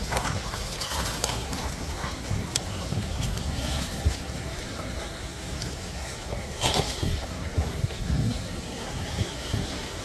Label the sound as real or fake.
fake